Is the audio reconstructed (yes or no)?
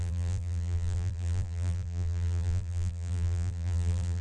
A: yes